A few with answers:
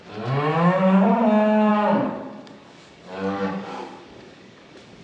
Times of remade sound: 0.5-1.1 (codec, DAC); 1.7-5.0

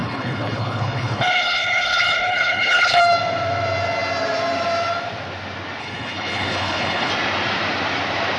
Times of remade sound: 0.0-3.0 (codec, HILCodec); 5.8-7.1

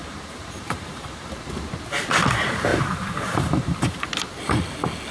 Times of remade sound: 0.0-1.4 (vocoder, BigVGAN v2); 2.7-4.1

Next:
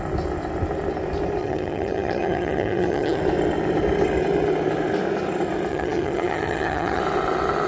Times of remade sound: 1.4-3.2 (vocoder, HiFi-GAN); 5.7-7.0

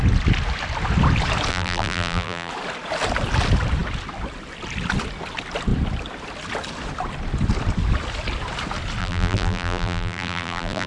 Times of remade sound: 1.5-2.5 (vocoder, BigVGAN v2); 9.0-10.9

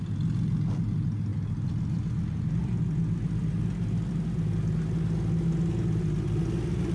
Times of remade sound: none